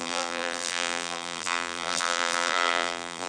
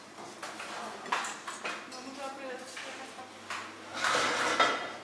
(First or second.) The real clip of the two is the second